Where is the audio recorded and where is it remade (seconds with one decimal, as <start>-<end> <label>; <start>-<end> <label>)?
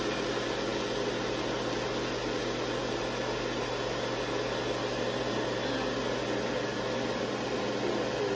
0.0-8.3 recorded